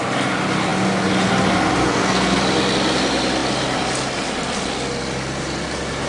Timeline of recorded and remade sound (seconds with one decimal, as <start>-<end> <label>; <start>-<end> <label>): 0.0-1.8 recorded; 1.8-2.4 remade; 2.4-6.1 recorded